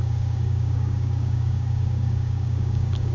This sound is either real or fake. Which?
fake